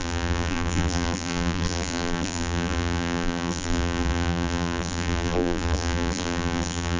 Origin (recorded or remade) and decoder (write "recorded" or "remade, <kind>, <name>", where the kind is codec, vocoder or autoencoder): remade, vocoder, BigVGAN v2